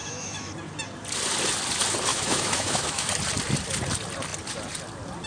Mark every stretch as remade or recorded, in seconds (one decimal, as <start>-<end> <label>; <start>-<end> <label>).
0.0-0.5 remade; 0.5-2.1 recorded; 2.1-3.1 remade; 3.1-5.3 recorded